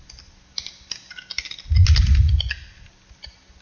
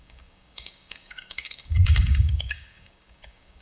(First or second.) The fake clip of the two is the second